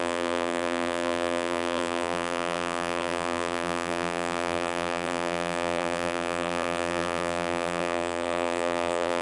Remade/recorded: remade